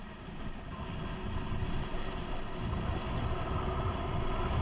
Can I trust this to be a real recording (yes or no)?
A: yes